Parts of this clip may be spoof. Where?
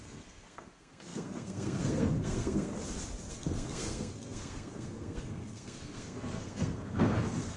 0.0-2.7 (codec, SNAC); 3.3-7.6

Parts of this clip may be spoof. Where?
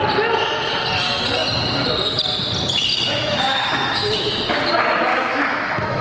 2.9-4.4 (autoencoder, DAC-VAE); 5.1-6.0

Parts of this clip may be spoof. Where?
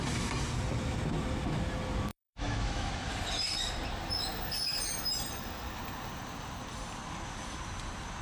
2.1-2.9 (autoencoder, DAC-VAE)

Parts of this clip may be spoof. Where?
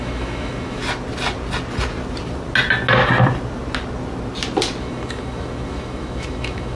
0.0-0.8 (autoencoder, DAC-VAE); 4.8-6.7